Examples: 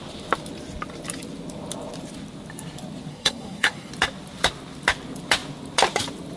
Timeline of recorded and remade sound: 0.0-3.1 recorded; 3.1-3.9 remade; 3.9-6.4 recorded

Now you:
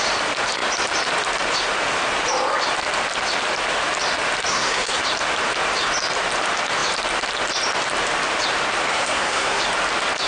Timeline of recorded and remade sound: 0.0-4.5 recorded; 4.5-5.0 remade; 5.0-8.9 recorded; 8.9-9.6 remade; 9.6-10.3 recorded

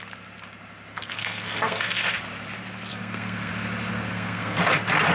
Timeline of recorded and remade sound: 0.0-0.9 recorded; 0.9-2.2 remade; 2.2-2.9 recorded; 2.9-3.5 remade; 3.5-3.9 recorded; 3.9-4.6 remade; 4.6-5.1 recorded